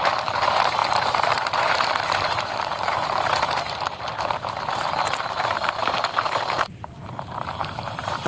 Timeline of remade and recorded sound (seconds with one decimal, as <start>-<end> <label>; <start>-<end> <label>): 0.0-8.3 remade